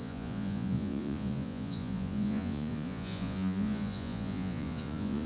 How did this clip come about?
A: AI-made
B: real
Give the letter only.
A